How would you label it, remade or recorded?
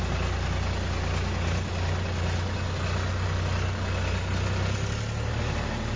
recorded